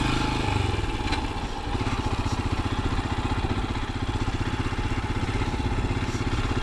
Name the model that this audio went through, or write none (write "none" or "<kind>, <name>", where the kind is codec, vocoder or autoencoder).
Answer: none